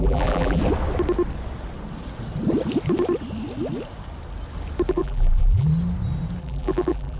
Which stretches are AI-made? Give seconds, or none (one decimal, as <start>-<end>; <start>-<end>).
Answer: 0.0-0.6; 4.9-5.7; 6.4-7.2